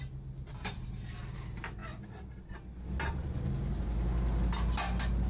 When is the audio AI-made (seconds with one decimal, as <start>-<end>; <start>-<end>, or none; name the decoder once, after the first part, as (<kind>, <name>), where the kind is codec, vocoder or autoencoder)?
none